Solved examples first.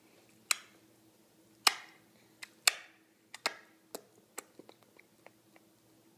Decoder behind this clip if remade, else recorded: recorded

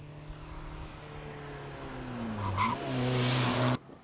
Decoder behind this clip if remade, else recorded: recorded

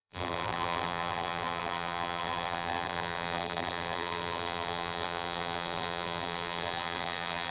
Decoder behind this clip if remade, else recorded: remade, vocoder, BigVGAN v2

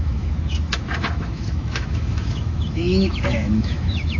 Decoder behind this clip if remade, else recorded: remade, autoencoder, DAC-VAE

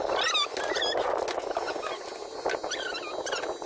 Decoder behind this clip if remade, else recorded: recorded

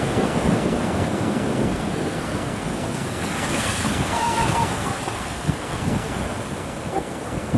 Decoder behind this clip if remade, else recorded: remade, codec, SNAC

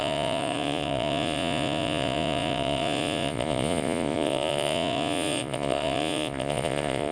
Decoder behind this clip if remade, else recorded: remade, vocoder, Vocos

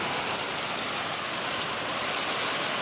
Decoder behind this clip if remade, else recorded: recorded